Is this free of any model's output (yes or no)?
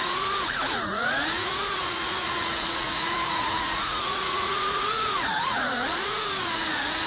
no